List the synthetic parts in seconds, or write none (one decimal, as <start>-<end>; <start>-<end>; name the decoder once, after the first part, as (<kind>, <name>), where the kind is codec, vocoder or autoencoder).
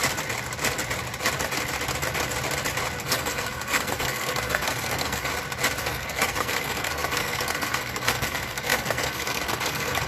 3.0-5.3 (codec, SNAC); 5.8-10.1